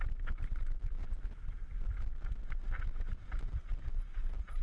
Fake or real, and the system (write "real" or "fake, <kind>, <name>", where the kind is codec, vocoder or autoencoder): real